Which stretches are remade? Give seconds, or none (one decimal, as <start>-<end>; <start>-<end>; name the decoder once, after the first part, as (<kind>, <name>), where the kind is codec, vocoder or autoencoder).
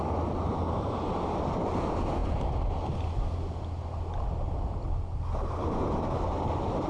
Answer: none